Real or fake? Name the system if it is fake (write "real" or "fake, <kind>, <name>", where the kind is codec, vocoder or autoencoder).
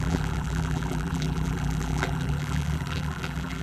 fake, vocoder, BigVGAN v2